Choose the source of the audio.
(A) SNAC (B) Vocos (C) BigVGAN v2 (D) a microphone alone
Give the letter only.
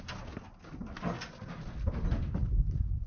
D